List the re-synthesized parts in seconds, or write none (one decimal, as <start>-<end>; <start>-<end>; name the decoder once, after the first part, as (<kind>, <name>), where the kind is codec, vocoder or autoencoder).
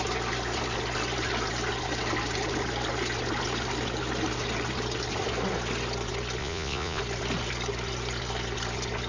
6.4-7.0 (vocoder, Vocos)